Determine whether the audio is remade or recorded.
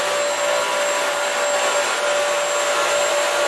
recorded